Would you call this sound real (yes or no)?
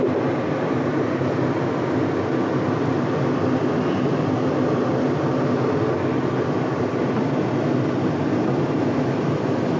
yes